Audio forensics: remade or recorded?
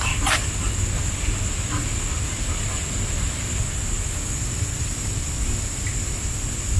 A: recorded